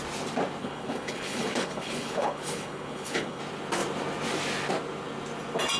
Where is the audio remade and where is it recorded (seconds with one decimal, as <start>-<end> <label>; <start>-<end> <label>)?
0.0-0.6 recorded; 0.6-3.4 remade; 3.4-5.8 recorded